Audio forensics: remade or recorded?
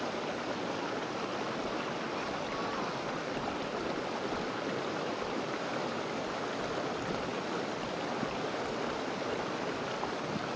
recorded